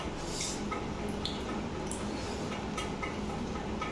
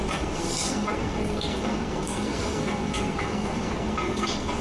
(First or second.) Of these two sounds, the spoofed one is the second